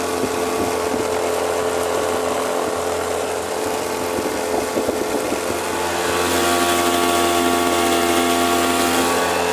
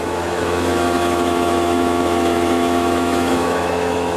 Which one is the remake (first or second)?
second